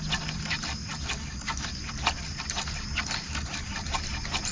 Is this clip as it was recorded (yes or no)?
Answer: yes